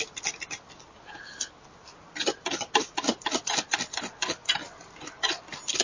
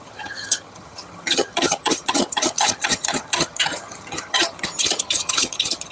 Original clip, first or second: first